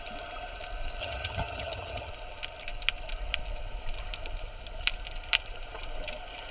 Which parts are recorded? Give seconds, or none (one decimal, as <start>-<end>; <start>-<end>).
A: 0.0-1.0; 2.1-6.5